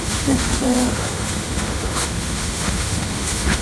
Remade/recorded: remade